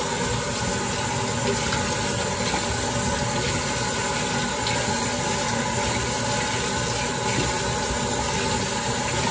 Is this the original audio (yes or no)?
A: yes